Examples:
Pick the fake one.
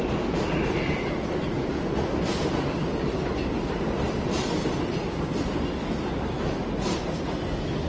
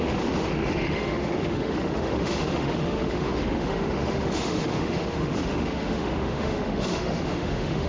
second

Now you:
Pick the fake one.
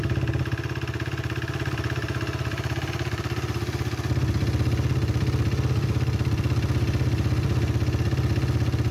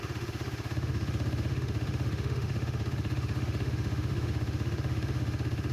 second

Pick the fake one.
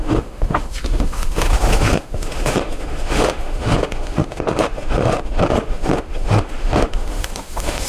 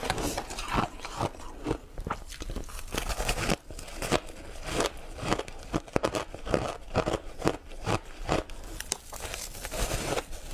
first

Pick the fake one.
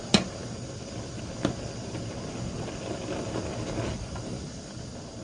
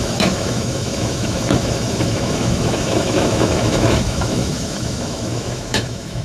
second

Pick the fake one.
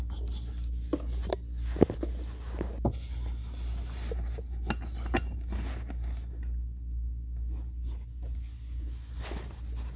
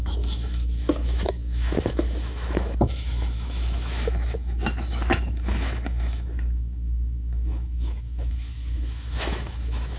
second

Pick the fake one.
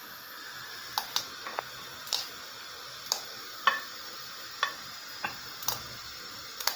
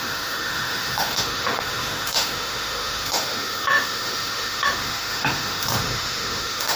second